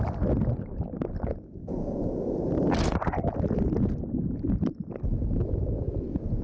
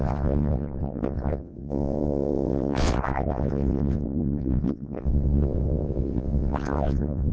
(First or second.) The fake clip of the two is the second